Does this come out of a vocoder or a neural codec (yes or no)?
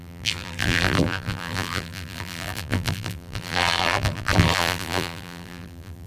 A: yes